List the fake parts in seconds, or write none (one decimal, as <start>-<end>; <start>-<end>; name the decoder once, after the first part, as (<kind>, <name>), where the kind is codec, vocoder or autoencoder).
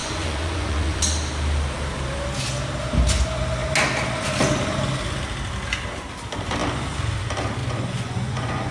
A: 0.0-1.0 (vocoder, Vocos); 7.6-8.7